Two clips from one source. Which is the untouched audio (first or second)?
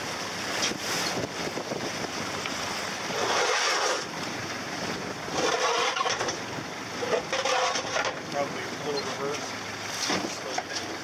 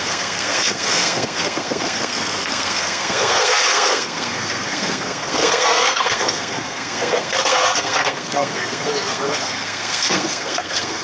first